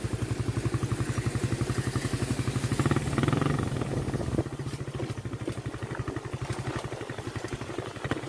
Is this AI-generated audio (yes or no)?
no